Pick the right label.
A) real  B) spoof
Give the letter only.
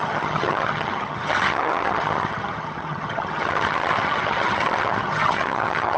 B